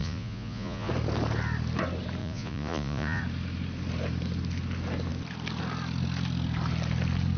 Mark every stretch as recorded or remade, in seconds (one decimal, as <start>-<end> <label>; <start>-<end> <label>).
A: 0.0-0.9 remade; 0.9-2.2 recorded; 2.2-3.2 remade; 3.2-7.4 recorded

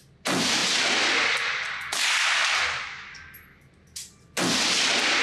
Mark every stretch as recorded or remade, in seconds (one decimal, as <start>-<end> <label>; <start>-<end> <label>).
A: 0.0-5.2 recorded

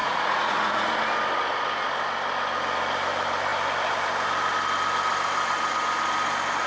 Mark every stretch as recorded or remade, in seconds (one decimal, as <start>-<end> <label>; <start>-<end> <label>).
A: 0.0-0.9 remade; 0.9-6.7 recorded